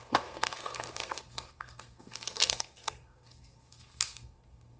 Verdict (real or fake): fake